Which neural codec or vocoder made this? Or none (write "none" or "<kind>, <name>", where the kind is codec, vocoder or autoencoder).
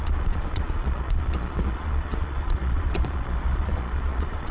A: vocoder, Vocos